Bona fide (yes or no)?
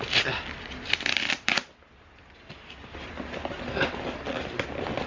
yes